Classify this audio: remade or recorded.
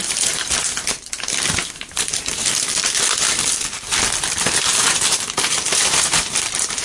remade